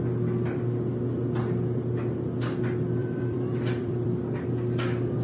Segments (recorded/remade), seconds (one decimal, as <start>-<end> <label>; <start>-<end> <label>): 0.0-3.0 recorded; 3.0-4.1 remade; 4.1-5.2 recorded